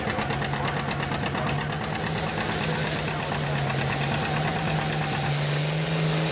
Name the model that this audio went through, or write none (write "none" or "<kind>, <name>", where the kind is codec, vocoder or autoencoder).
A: none